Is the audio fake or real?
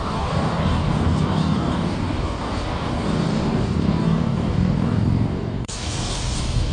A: fake